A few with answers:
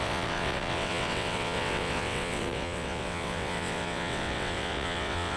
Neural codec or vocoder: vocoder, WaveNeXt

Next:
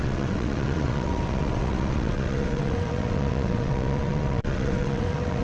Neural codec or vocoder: vocoder, WaveNeXt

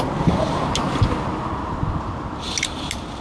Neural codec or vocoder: none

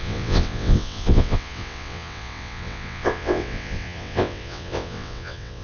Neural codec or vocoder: vocoder, WaveNeXt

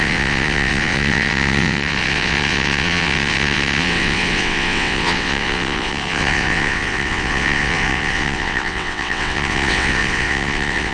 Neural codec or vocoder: vocoder, WaveNeXt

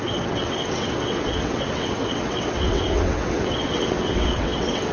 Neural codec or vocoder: vocoder, WaveNeXt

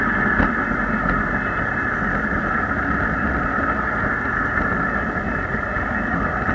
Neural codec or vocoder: none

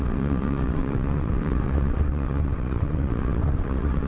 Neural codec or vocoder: vocoder, WaveNeXt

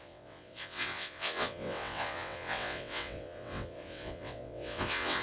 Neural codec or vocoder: vocoder, WaveNeXt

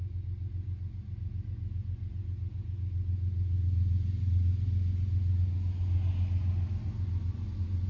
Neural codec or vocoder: none